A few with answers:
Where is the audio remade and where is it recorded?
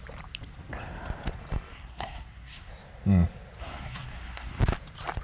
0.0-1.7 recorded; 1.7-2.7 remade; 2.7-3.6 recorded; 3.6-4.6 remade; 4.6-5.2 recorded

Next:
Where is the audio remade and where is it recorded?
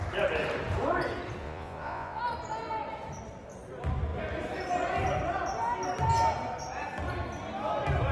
0.0-1.4 recorded; 1.4-2.2 remade; 2.2-8.1 recorded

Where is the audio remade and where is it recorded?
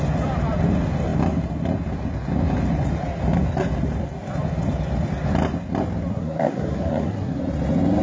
0.0-6.1 recorded; 6.1-7.4 remade; 7.4-8.0 recorded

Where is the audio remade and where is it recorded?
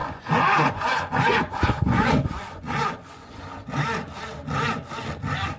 0.0-3.4 remade; 3.4-5.6 recorded